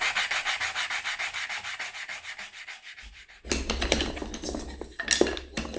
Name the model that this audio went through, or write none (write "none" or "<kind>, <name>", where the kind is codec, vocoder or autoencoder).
none